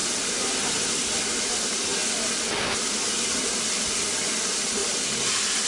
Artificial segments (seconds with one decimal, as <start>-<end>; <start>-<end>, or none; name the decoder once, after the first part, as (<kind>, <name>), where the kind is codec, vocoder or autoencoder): 0.0-1.9 (vocoder, BigVGAN v2); 3.4-4.8; 5.3-5.7